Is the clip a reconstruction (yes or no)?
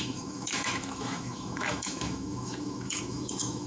yes